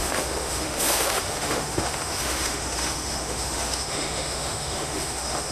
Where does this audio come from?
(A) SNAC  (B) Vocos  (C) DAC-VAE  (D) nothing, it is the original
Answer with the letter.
C